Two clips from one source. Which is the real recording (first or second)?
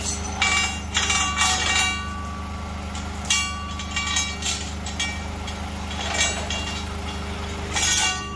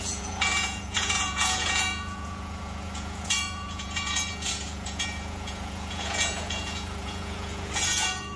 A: first